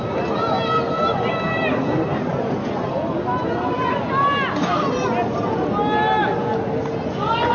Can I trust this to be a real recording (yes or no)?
yes